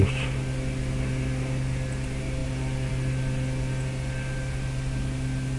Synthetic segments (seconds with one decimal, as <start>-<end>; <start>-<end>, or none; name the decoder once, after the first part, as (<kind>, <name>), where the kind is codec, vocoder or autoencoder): 2.4-2.9 (vocoder, BigVGAN v2)